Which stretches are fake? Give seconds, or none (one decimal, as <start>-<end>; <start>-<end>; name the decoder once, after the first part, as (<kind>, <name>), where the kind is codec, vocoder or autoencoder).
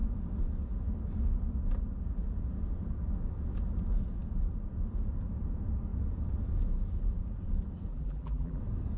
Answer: 7.9-8.6 (vocoder, BigVGAN v2)